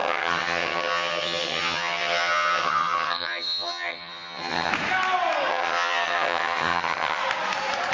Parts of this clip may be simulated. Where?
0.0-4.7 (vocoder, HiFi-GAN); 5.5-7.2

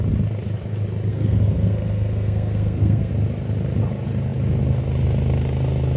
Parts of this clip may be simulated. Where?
1.1-3.1 (codec, SNAC)

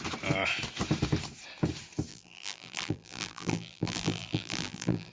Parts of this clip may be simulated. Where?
2.1-5.1 (vocoder, BigVGAN v2)

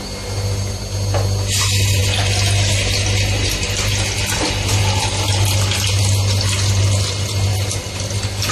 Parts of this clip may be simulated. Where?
none

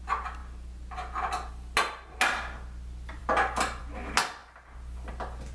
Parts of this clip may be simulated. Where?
none